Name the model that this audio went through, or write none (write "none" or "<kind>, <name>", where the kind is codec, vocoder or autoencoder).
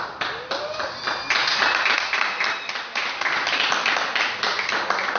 none